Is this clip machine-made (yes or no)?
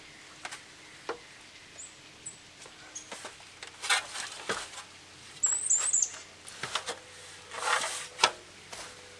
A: no